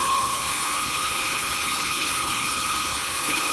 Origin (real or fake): fake